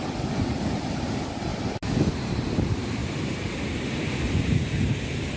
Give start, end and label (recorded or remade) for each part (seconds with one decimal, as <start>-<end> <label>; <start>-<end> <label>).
0.0-1.5 remade; 1.5-2.1 recorded; 2.1-3.0 remade; 3.0-3.6 recorded; 3.6-5.4 remade